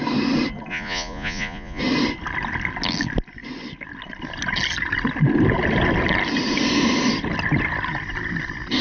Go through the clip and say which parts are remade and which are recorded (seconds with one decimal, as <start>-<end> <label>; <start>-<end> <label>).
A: 0.0-0.7 recorded; 0.7-1.8 remade; 1.8-8.8 recorded